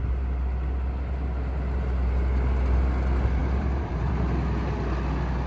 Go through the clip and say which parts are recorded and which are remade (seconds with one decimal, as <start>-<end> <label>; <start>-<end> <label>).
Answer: 0.0-3.4 recorded; 3.4-4.1 remade; 4.1-5.5 recorded